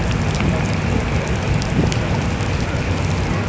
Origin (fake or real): real